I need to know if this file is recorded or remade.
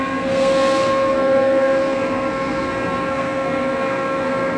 remade